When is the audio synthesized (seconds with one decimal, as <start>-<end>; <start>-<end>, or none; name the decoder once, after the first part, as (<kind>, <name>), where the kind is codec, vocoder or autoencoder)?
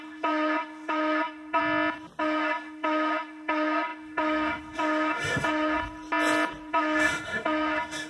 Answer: 0.0-1.6 (autoencoder, DAC-VAE); 2.2-5.8; 6.7-8.1